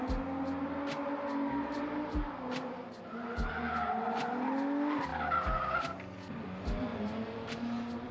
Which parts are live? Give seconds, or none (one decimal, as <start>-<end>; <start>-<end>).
0.0-6.9